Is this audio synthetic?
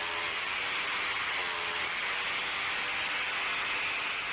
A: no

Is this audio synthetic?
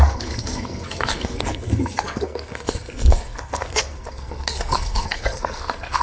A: yes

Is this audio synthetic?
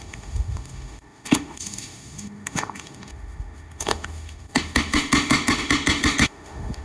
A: yes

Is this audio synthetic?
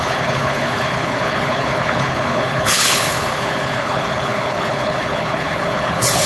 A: yes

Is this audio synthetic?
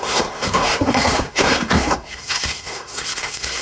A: yes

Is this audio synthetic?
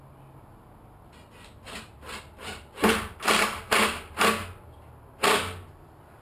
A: no